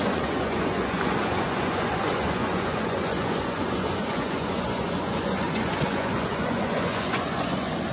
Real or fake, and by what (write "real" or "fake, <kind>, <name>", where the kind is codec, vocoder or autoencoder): fake, vocoder, Vocos